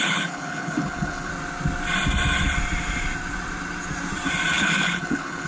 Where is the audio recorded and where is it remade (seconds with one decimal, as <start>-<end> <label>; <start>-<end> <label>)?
0.0-1.3 remade; 1.3-4.5 recorded; 4.5-5.5 remade